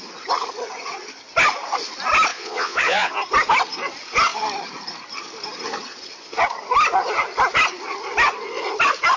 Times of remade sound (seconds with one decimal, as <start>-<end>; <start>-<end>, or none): 2.3-3.1